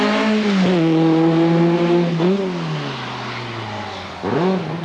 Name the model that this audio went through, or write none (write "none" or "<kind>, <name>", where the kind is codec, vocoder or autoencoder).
none